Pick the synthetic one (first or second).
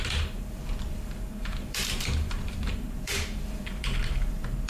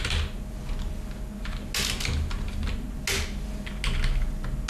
first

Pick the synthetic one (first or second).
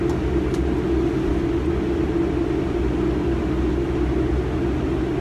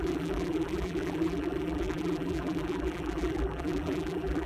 second